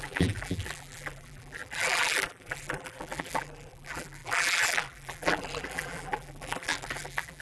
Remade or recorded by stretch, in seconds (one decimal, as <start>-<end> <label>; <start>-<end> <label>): 0.0-7.4 remade